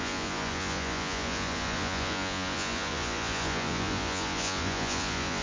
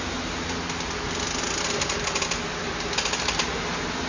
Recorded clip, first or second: second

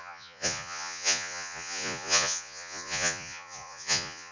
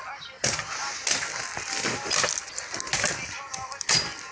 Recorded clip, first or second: second